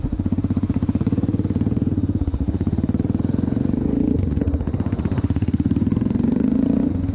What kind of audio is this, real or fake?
fake